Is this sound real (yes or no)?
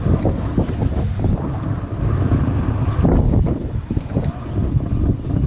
yes